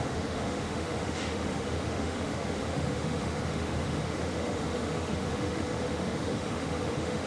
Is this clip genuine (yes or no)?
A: no